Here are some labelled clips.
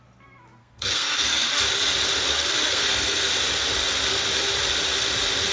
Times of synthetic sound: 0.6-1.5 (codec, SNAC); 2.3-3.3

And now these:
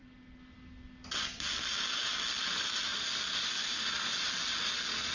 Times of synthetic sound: none

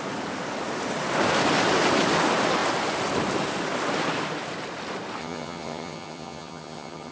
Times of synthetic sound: 5.2-7.1 (vocoder, HiFi-GAN)